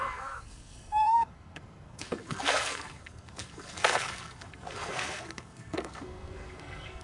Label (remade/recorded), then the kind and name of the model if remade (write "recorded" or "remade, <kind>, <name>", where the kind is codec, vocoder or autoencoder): remade, codec, SNAC